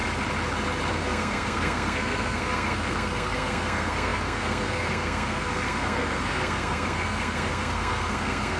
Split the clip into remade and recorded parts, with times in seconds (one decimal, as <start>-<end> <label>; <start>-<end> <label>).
0.0-0.9 recorded; 0.9-8.6 remade